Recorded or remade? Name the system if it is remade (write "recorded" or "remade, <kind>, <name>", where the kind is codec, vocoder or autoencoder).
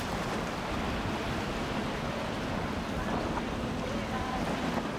recorded